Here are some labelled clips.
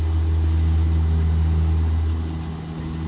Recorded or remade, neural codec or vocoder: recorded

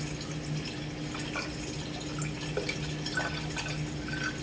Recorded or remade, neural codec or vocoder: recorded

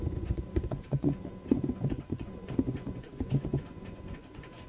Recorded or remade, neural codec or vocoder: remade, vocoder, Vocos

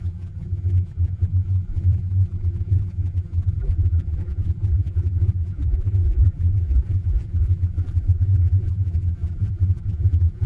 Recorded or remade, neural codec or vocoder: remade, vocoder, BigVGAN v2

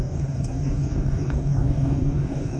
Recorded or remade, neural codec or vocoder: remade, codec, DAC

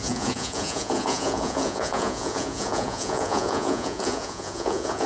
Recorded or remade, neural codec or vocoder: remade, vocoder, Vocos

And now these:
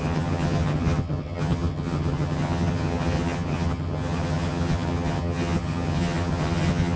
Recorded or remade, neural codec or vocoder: remade, vocoder, HiFi-GAN